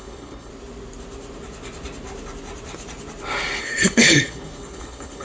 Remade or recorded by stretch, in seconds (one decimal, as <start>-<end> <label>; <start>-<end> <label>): 0.0-0.5 remade; 0.5-3.6 recorded; 3.6-5.2 remade